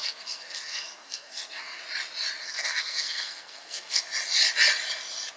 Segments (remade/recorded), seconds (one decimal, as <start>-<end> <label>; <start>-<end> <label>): 0.0-1.8 remade; 1.8-2.4 recorded; 2.4-4.0 remade; 4.0-5.4 recorded